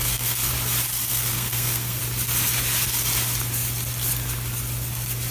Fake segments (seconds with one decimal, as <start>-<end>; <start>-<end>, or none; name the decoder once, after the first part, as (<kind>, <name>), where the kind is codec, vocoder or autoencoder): 0.0-0.5 (codec, SNAC); 1.1-2.0